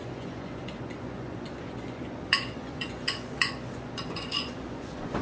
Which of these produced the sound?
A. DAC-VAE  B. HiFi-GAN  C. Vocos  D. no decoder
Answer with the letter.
C